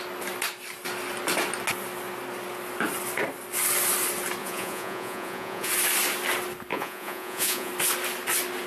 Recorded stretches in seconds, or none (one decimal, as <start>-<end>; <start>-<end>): 0.0-4.4; 5.7-6.7; 7.7-8.7